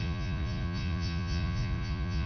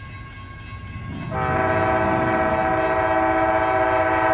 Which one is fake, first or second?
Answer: first